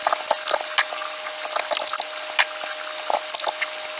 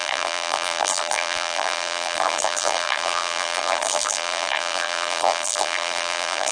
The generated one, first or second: second